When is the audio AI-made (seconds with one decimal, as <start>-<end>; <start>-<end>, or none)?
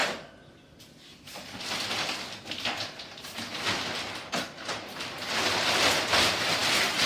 none